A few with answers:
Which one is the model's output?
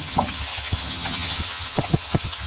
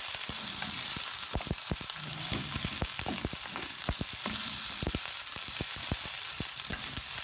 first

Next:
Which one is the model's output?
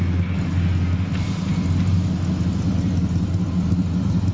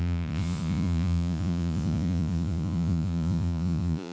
second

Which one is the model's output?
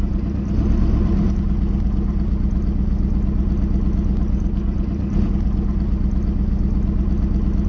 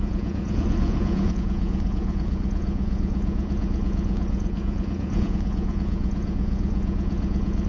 second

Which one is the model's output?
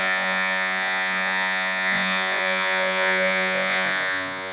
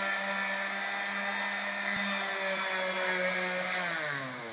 first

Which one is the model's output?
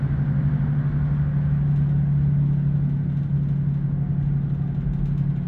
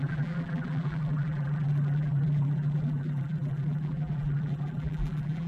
second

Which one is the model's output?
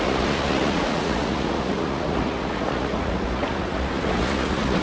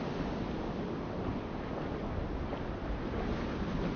first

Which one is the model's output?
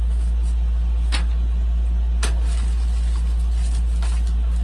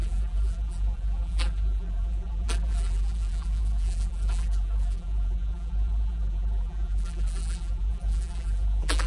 second